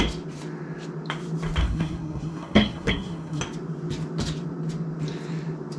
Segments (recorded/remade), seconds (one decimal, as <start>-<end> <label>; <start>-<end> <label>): 0.0-1.6 recorded; 1.6-3.4 remade; 3.4-5.8 recorded